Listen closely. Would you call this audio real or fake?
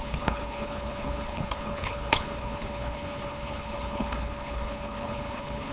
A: fake